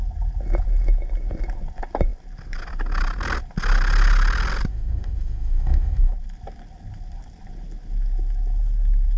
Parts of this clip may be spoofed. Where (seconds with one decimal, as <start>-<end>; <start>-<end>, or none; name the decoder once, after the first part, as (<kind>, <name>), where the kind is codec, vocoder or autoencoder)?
4.7-6.1 (autoencoder, DAC-VAE)